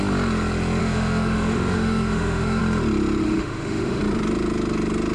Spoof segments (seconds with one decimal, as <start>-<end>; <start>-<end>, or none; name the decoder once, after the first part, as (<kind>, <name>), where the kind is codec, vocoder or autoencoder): 0.8-2.6 (autoencoder, DAC-VAE); 3.2-4.0